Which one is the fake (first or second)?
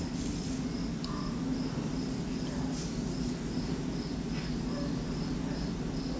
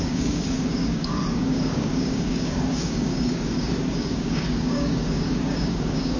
second